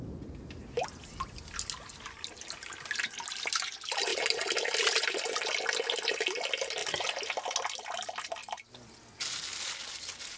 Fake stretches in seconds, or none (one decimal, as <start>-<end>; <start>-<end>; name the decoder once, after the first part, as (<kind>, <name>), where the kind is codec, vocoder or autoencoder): 6.8-7.3 (vocoder, BigVGAN v2); 8.4-9.1